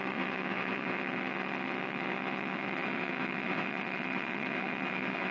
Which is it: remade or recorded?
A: remade